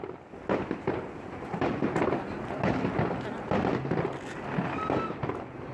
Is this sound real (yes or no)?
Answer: yes